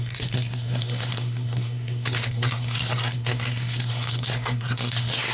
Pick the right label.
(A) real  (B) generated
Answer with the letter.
B